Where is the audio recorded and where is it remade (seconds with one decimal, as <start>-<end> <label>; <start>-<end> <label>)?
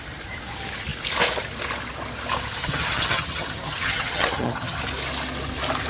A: 0.0-2.6 recorded; 2.6-4.8 remade; 4.8-5.9 recorded